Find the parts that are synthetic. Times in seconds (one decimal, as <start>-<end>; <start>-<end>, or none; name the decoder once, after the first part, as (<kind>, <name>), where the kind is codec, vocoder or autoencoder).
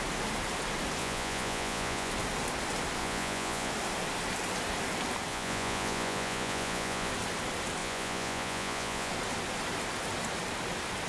1.0-2.1 (vocoder, Vocos); 3.0-3.7; 5.3-7.1; 7.8-9.1